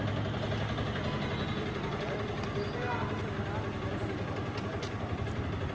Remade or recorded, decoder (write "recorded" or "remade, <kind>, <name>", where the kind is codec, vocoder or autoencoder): recorded